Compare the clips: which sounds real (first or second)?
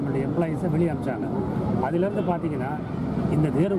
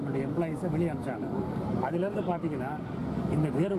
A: first